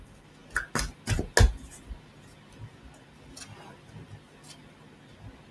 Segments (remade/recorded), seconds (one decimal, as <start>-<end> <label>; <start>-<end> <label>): 0.0-5.5 recorded